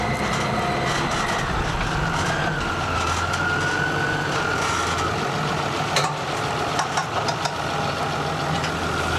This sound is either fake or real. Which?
real